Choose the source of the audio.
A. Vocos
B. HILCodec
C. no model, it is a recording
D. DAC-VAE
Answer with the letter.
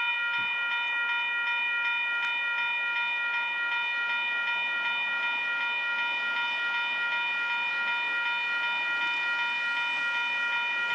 C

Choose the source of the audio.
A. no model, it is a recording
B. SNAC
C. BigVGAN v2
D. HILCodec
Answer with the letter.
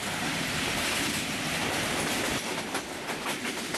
A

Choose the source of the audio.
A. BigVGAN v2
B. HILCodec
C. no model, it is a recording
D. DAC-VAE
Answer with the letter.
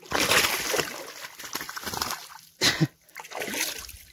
C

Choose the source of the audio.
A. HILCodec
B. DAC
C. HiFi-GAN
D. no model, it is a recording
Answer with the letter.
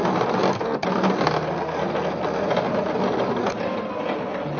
D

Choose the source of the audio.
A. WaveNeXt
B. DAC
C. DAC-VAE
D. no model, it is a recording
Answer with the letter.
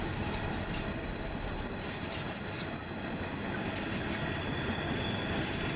D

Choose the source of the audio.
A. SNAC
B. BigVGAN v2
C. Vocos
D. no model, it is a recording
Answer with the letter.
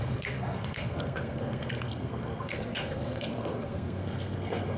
A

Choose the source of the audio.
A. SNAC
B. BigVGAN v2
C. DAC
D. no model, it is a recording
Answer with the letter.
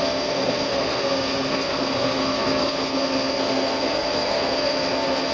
A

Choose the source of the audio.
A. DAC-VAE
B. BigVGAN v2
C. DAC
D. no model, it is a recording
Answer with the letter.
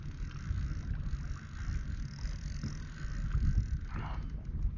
D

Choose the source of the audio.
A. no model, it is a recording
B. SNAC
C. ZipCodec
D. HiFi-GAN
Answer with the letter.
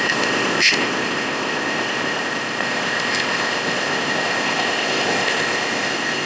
C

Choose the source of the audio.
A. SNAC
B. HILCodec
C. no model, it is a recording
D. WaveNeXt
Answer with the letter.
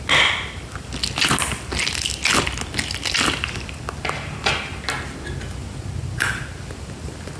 C